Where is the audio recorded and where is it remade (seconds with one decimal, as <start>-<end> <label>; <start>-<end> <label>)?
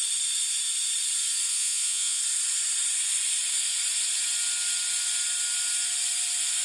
0.0-1.5 recorded; 1.5-2.2 remade; 2.2-6.6 recorded